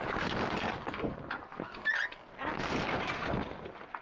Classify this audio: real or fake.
real